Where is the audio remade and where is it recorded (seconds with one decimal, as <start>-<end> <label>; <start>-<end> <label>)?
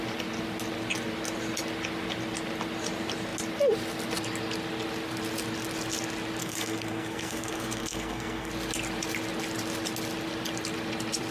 0.0-6.4 recorded; 6.4-8.5 remade; 8.5-11.3 recorded